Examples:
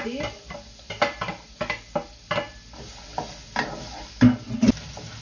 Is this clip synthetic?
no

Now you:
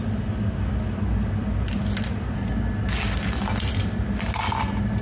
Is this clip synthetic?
no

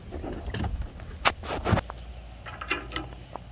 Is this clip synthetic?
no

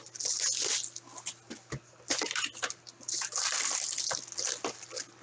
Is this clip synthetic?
no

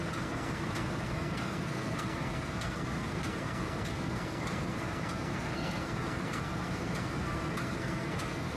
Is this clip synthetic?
yes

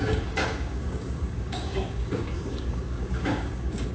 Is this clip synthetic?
yes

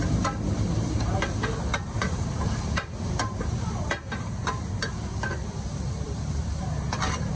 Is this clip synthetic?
yes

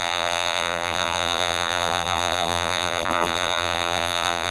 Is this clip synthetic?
yes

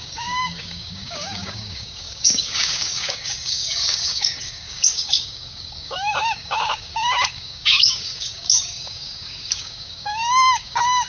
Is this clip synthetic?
yes